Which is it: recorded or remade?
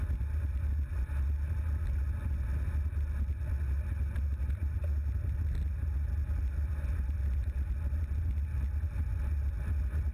recorded